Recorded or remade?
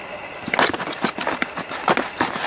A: recorded